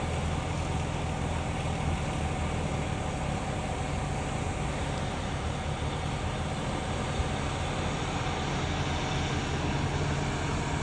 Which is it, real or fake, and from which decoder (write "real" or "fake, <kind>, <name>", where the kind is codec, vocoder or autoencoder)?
real